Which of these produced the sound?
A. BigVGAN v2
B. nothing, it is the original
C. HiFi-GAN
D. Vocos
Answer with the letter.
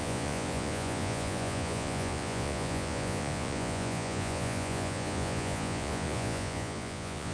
D